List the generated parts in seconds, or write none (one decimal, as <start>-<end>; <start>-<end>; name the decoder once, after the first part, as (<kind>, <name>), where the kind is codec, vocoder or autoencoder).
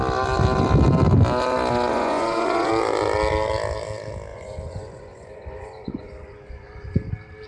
1.9-2.7 (vocoder, Vocos); 4.3-7.1